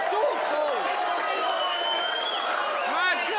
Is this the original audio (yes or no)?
yes